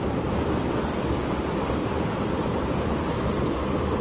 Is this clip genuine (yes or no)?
yes